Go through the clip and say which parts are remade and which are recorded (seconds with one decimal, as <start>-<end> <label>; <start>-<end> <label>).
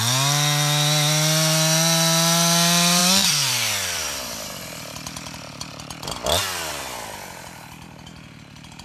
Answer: 0.0-3.0 recorded; 3.0-4.2 remade; 4.2-8.8 recorded